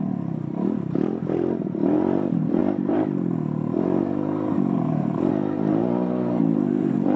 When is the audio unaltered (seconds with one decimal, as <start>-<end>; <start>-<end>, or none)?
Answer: none